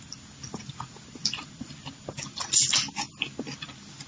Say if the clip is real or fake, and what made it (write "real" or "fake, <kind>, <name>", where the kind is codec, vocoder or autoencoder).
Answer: real